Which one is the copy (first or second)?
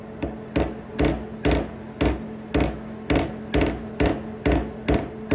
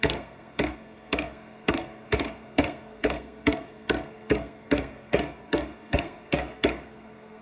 second